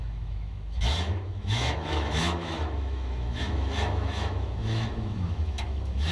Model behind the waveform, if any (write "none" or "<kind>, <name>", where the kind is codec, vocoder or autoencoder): autoencoder, DAC-VAE